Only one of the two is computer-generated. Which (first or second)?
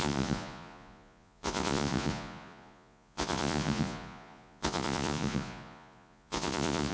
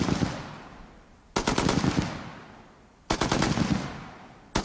first